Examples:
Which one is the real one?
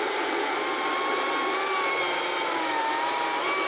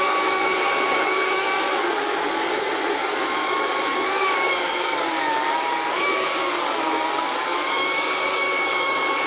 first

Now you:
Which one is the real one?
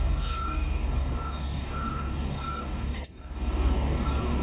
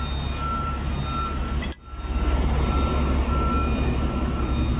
second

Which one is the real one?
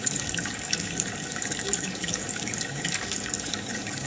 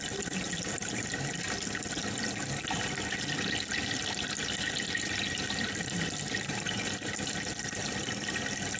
second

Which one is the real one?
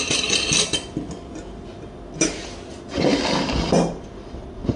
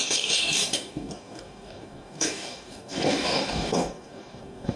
first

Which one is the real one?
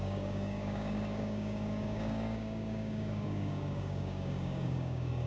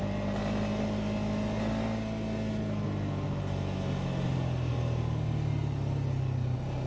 second